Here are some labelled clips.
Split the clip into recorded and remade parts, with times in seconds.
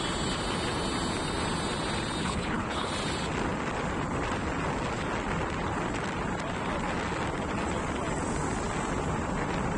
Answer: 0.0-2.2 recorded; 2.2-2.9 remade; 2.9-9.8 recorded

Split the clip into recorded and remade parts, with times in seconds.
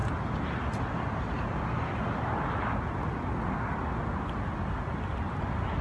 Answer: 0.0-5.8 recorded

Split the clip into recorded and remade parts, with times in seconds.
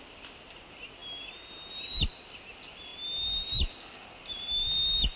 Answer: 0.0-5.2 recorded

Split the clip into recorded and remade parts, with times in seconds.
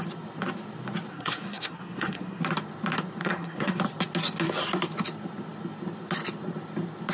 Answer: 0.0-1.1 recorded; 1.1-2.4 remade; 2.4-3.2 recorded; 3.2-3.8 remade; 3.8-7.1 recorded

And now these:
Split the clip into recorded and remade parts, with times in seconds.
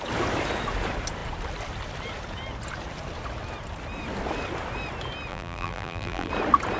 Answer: 0.0-5.3 recorded; 5.3-6.3 remade; 6.3-6.8 recorded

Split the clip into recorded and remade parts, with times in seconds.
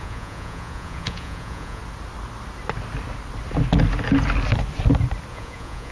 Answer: 0.0-1.8 remade; 1.8-5.3 recorded; 5.3-5.9 remade